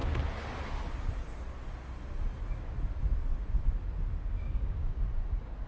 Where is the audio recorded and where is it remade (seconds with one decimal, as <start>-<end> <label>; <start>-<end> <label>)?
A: 0.0-4.3 recorded; 4.3-5.0 remade; 5.0-5.7 recorded